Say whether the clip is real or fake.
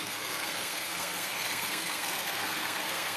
fake